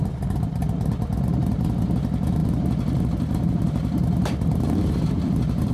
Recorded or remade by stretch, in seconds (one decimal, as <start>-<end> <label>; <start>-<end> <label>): 0.0-0.6 remade; 0.6-1.4 recorded; 1.4-5.7 remade